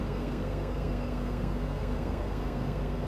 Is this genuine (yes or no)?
no